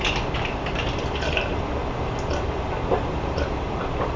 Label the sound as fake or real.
real